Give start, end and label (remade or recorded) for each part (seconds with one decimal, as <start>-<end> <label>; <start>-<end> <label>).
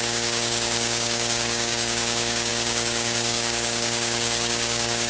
0.0-5.1 remade